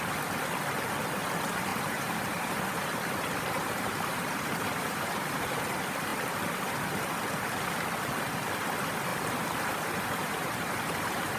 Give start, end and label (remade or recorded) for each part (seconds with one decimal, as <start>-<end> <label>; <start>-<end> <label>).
0.0-1.7 recorded; 1.7-5.6 remade; 5.6-9.1 recorded; 9.1-11.4 remade